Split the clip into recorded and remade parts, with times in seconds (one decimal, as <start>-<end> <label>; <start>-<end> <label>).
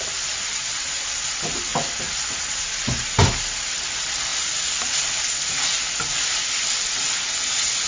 0.0-7.9 recorded